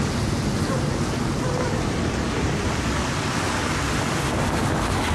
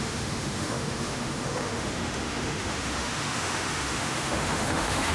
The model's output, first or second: second